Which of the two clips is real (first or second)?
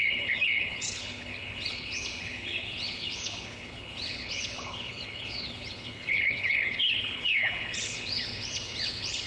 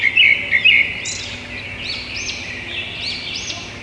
second